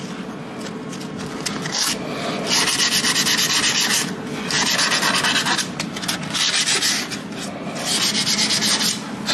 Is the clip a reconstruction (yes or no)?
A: no